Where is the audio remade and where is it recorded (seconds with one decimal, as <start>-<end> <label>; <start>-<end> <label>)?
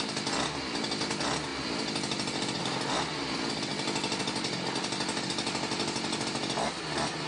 0.0-7.3 recorded